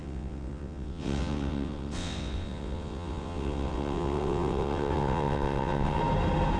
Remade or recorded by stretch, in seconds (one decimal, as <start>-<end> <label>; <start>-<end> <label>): 0.0-6.0 remade; 6.0-6.6 recorded